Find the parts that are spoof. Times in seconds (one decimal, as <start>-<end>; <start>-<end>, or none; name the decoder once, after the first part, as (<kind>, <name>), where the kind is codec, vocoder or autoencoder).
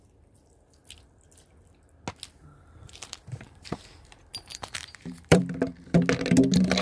2.8-5.4 (vocoder, BigVGAN v2)